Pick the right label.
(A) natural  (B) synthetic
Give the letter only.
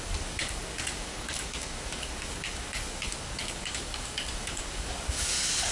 B